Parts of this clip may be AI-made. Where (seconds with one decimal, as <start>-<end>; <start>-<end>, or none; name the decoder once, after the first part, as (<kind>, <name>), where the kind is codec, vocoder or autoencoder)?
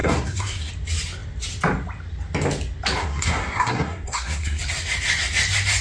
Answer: 0.0-0.7 (codec, SNAC); 3.0-4.6